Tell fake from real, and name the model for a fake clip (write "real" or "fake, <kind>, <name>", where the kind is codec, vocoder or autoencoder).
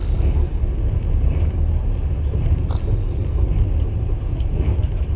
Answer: real